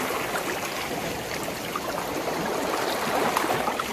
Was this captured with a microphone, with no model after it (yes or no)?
yes